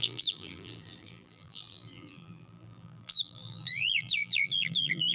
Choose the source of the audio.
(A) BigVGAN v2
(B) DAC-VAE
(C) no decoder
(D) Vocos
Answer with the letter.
A